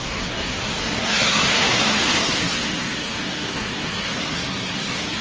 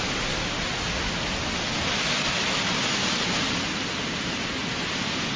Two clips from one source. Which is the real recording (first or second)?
second